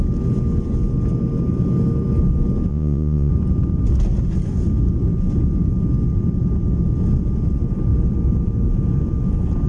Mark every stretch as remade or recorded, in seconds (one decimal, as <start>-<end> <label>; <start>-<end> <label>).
0.0-2.7 recorded; 2.7-3.3 remade; 3.3-9.7 recorded